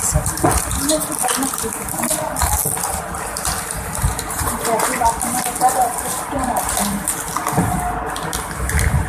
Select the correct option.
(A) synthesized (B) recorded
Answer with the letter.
B